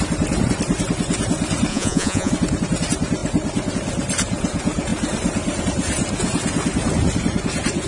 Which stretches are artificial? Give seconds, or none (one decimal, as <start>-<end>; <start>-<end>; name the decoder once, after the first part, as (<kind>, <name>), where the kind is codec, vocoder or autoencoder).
1.7-2.3 (vocoder, Vocos)

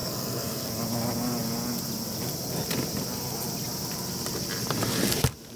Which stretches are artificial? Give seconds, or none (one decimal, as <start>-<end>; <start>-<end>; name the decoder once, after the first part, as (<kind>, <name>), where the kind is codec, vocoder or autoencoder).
0.0-0.7 (codec, SNAC)

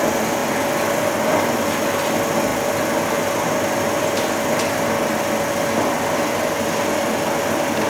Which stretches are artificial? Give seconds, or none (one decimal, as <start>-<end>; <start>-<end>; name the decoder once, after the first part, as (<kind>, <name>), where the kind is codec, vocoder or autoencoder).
none

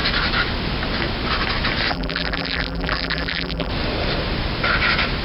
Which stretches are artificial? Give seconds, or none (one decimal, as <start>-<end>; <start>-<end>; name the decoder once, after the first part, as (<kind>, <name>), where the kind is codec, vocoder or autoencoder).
1.9-3.7 (vocoder, BigVGAN v2)

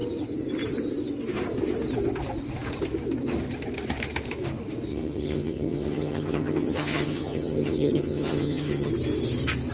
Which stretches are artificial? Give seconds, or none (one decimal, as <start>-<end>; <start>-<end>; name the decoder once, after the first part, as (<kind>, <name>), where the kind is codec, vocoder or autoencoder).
4.9-8.9 (vocoder, HiFi-GAN)

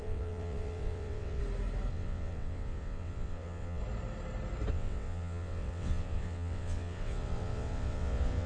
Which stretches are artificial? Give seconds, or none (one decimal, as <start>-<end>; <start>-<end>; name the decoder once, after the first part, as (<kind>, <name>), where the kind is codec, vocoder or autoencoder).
0.0-1.4 (vocoder, WaveNeXt); 1.9-3.8; 4.7-8.5

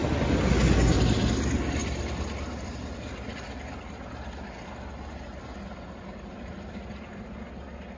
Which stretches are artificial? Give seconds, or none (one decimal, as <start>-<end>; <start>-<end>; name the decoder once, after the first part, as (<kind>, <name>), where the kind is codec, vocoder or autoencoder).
none